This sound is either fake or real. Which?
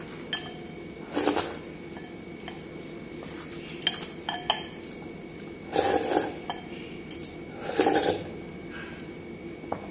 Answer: real